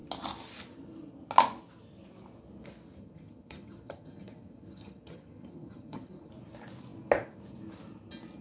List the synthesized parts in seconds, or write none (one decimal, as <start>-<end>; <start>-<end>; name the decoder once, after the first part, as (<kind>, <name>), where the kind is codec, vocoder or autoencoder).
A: 3.0-6.3 (vocoder, HiFi-GAN)